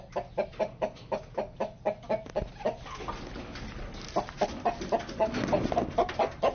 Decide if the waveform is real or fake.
real